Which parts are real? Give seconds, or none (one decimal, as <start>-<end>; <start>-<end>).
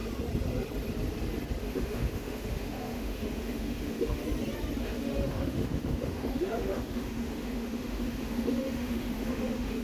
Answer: 0.0-1.6; 4.2-4.8